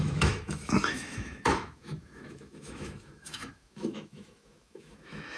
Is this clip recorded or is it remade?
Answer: remade